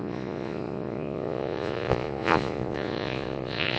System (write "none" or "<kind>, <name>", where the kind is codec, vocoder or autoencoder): vocoder, Vocos